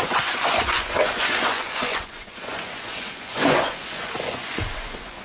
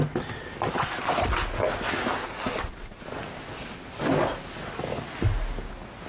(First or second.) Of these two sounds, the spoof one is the first